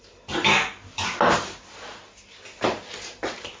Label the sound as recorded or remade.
recorded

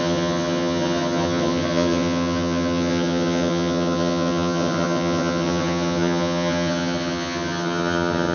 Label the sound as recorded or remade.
remade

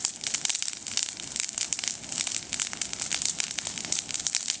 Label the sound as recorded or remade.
recorded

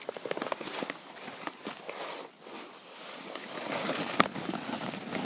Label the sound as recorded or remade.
recorded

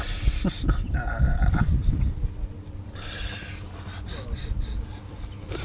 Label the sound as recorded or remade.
recorded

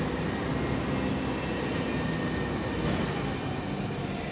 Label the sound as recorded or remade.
recorded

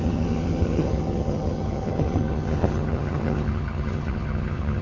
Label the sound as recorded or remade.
remade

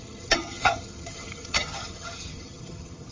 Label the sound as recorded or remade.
remade